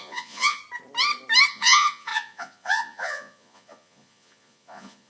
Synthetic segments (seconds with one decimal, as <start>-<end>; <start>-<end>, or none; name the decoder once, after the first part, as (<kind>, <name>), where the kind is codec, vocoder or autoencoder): 0.0-0.6 (vocoder, Vocos); 1.5-5.1